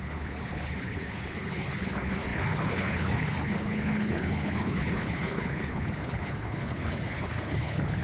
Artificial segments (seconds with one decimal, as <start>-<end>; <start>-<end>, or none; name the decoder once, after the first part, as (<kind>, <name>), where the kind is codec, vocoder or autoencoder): 0.0-8.0 (codec, HILCodec)